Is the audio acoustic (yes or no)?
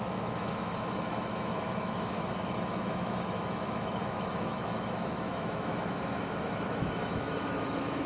no